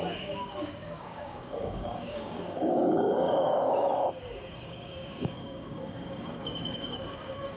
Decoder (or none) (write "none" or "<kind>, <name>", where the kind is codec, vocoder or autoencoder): codec, DAC